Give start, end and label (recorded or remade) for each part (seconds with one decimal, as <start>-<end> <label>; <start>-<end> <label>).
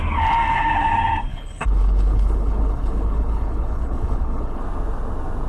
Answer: 0.0-1.3 recorded; 1.3-4.6 remade; 4.6-5.5 recorded